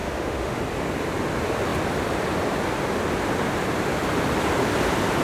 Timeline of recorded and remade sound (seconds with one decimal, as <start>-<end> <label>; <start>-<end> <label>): 0.0-0.6 remade; 0.6-5.2 recorded